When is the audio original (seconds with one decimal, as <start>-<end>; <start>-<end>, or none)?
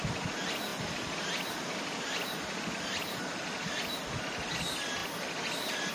0.0-5.9